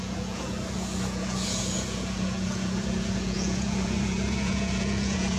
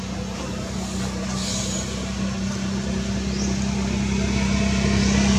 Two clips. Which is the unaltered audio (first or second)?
second